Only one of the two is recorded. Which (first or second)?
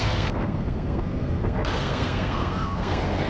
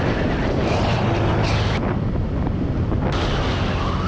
second